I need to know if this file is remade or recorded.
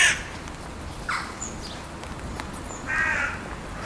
recorded